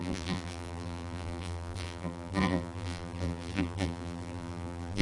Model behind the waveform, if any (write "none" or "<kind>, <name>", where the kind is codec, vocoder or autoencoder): vocoder, BigVGAN v2